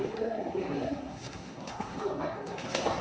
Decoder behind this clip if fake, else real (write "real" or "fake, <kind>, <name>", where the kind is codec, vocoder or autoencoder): fake, codec, SNAC